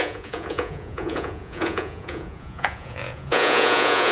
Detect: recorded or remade remade